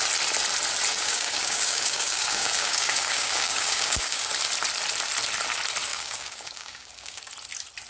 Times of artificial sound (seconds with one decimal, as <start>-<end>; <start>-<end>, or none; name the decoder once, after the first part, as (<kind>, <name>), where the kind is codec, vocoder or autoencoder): 0.9-4.3 (codec, DAC); 5.9-7.3